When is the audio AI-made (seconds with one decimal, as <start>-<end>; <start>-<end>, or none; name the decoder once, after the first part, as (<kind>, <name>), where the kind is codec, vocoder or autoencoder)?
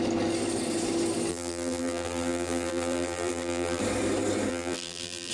1.3-3.8 (vocoder, BigVGAN v2); 4.5-5.3